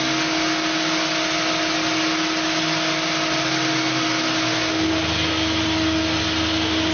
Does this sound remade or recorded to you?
recorded